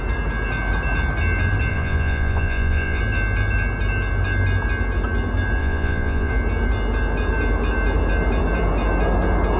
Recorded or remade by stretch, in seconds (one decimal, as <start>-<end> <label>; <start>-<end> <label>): 0.0-1.7 recorded; 1.7-3.0 remade; 3.0-5.6 recorded; 5.6-6.3 remade; 6.3-9.6 recorded